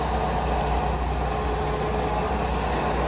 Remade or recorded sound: recorded